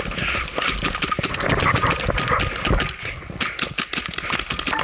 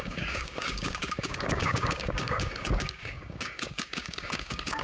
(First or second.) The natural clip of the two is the first